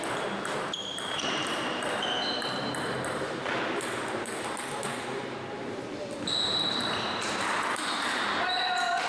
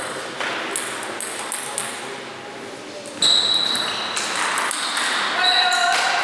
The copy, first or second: first